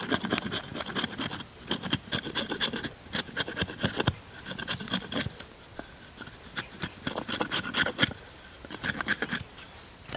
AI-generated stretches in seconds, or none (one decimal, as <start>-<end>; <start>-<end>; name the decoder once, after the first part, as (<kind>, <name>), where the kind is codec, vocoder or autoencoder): none